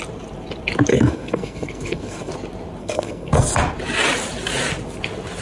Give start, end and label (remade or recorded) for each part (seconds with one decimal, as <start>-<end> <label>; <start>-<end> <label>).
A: 0.0-0.9 recorded; 0.9-2.3 remade; 2.3-2.8 recorded; 2.8-3.5 remade; 3.5-5.4 recorded